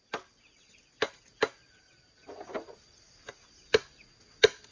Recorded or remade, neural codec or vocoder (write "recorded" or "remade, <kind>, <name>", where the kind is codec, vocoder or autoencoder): recorded